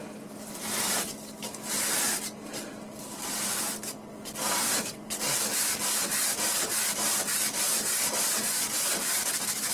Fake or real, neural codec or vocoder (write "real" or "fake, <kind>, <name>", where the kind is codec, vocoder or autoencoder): fake, vocoder, BigVGAN v2